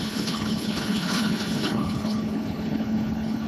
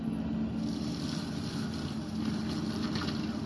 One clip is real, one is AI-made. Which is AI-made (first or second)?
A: first